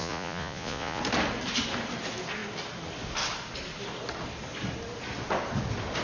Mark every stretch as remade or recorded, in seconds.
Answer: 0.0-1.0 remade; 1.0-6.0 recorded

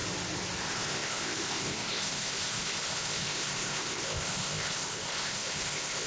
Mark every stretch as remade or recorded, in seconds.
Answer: 0.0-0.6 recorded; 0.6-6.1 remade